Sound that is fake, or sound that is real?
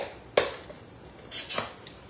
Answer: real